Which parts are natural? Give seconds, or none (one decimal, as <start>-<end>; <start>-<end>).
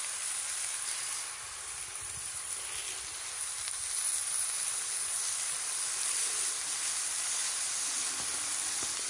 0.0-9.1